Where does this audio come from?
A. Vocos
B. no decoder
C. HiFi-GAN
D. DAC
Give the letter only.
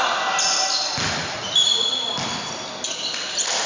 B